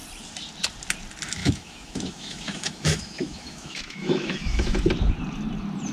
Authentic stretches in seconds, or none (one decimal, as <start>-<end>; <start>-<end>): 0.0-1.4; 4.9-5.9